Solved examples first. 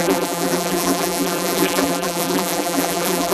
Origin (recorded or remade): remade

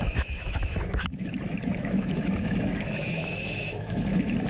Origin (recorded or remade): remade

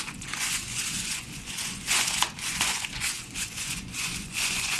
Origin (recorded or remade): remade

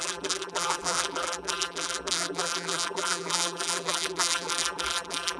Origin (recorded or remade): remade